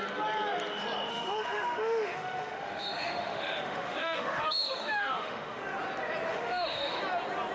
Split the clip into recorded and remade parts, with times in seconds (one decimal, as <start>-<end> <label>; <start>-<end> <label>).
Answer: 0.0-1.1 recorded; 1.1-5.6 remade; 5.6-6.3 recorded; 6.3-7.0 remade; 7.0-7.5 recorded

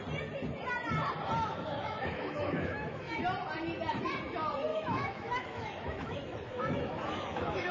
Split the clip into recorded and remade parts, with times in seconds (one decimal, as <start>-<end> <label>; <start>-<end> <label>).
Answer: 0.0-1.4 recorded; 1.4-3.2 remade; 3.2-4.7 recorded; 4.7-7.7 remade